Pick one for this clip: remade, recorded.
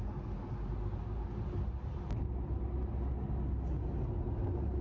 recorded